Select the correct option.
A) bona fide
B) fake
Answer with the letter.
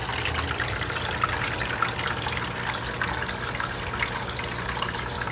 A